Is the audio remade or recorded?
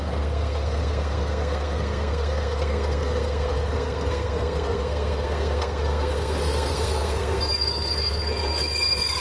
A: remade